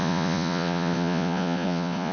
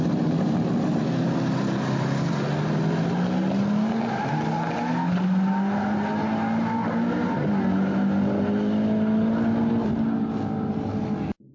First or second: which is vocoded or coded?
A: first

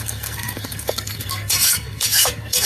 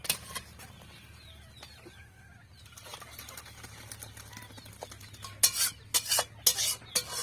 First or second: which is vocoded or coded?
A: first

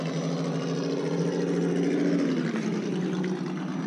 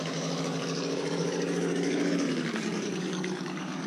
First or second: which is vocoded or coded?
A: second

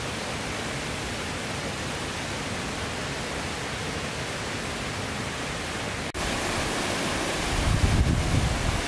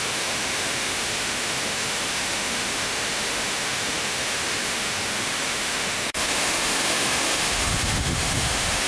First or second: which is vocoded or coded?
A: second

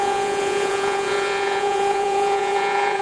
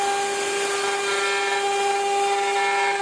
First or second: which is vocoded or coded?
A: first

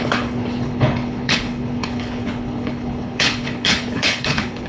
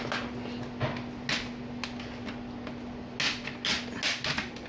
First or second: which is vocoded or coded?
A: first